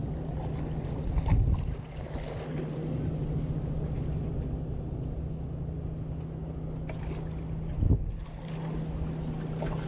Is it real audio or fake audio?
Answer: real